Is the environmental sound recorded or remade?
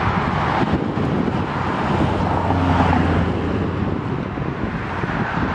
recorded